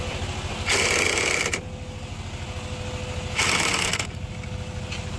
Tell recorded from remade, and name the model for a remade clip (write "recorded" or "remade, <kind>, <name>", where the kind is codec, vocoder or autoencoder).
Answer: recorded